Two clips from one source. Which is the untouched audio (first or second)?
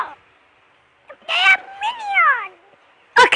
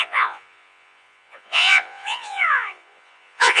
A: first